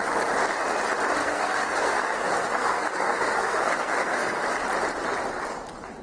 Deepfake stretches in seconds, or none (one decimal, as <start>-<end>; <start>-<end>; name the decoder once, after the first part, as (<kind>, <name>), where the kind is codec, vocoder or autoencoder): 1.2-4.4 (codec, SNAC)